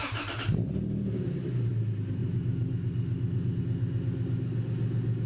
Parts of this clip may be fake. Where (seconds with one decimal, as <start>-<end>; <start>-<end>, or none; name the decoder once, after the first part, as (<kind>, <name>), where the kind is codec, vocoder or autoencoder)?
0.0-1.7 (vocoder, BigVGAN v2)